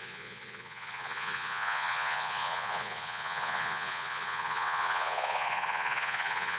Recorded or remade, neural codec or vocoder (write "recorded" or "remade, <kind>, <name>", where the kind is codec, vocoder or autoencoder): remade, vocoder, Vocos